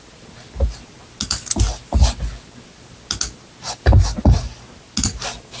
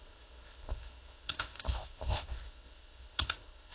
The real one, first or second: first